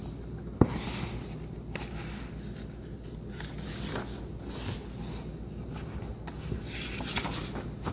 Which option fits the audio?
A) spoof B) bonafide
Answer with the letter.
B